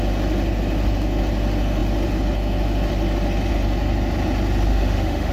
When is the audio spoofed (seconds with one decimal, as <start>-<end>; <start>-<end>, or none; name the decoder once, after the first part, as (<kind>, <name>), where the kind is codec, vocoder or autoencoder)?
4.7-5.3 (autoencoder, DAC-VAE)